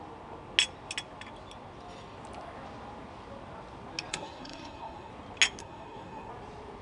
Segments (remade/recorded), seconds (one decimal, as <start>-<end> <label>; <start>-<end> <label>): 0.0-4.1 recorded; 4.1-5.1 remade; 5.1-5.6 recorded; 5.6-6.3 remade; 6.3-6.8 recorded